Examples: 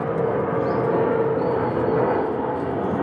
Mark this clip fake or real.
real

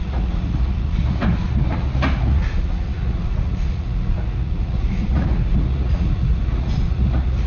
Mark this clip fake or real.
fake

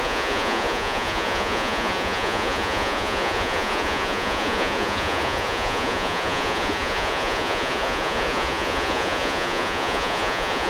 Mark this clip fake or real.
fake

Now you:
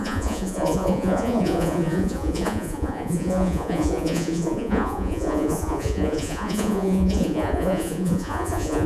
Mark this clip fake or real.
fake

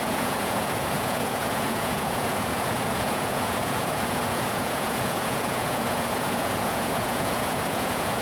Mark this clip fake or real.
fake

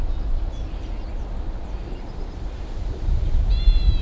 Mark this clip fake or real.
real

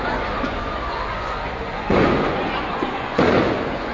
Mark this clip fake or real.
fake